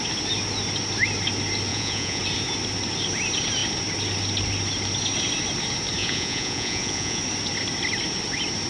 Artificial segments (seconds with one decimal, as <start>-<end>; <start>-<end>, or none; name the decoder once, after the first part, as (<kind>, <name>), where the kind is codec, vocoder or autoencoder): 1.7-2.2 (vocoder, Vocos); 6.0-7.2